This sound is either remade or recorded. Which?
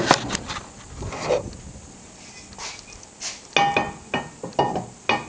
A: recorded